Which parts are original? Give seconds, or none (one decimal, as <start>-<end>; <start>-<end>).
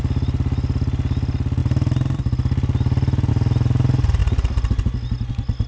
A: 0.0-5.7